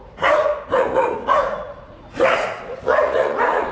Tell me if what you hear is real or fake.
fake